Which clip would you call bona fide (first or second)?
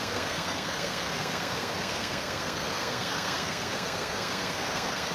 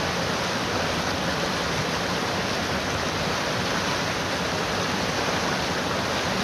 second